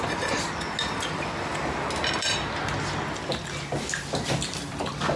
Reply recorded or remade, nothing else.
recorded